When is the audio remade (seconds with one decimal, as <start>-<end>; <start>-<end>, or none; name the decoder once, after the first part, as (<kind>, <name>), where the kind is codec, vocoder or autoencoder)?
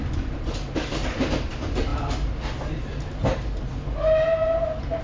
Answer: none